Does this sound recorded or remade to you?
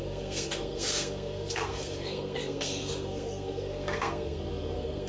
remade